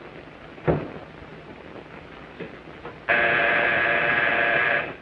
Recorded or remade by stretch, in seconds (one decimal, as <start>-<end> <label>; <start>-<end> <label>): 0.0-5.0 recorded